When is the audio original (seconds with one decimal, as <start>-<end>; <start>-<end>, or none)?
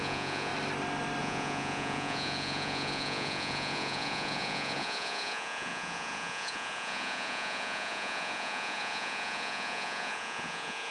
0.5-1.2